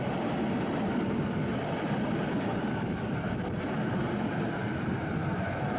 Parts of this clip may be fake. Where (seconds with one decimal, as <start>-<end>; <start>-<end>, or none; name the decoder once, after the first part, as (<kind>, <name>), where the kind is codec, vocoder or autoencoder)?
0.7-4.0 (vocoder, BigVGAN v2)